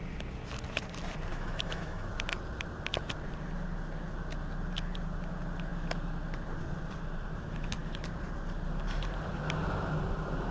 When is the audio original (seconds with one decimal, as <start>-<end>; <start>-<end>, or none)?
0.0-1.3; 2.1-10.5